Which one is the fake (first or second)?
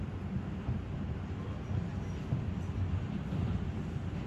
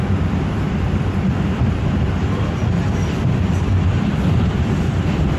second